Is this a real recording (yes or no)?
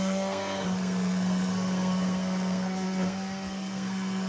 no